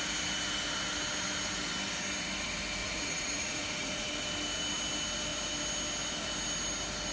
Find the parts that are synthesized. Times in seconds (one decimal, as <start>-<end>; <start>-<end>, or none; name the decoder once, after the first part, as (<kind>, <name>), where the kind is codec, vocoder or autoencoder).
2.8-4.1 (vocoder, Vocos)